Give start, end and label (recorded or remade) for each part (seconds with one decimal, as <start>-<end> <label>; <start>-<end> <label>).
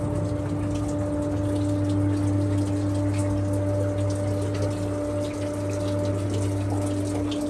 0.0-7.5 recorded